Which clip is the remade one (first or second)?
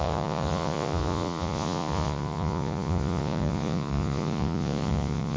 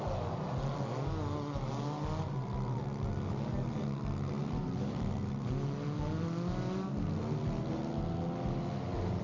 first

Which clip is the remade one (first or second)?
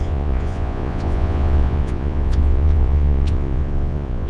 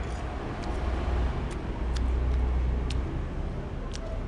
first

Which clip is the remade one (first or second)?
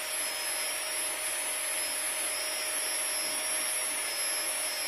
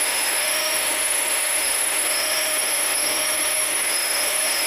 second